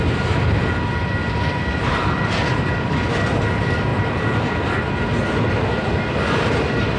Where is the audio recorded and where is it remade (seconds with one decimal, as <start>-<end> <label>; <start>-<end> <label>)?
0.0-1.2 recorded; 1.2-3.1 remade; 3.1-3.9 recorded; 3.9-4.8 remade; 4.8-7.0 recorded